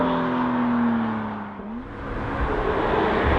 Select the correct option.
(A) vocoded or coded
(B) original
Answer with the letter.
B